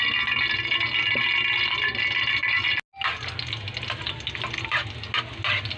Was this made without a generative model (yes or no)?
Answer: yes